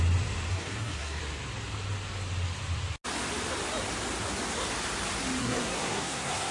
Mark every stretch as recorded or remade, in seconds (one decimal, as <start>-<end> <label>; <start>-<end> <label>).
0.0-0.5 recorded; 0.5-1.2 remade; 1.2-5.4 recorded; 5.4-6.5 remade